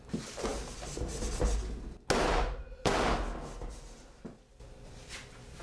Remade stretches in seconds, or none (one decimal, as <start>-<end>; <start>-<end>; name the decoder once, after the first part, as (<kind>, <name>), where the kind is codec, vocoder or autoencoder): none

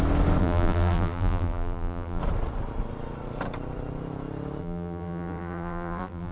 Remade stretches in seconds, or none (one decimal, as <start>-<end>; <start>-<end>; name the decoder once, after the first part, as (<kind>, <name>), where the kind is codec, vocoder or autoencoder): 0.4-2.2 (vocoder, BigVGAN v2); 4.6-6.3